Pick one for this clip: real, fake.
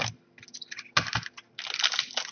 real